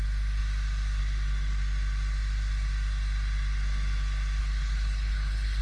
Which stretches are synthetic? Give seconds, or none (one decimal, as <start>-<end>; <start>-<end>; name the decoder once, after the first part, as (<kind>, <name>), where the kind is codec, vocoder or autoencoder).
4.4-5.6 (codec, HILCodec)